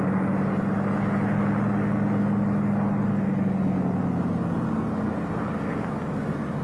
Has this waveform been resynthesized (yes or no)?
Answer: no